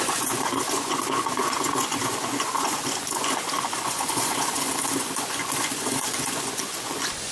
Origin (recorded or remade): remade